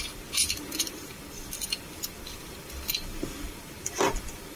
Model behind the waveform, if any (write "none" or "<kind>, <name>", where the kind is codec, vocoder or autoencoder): vocoder, BigVGAN v2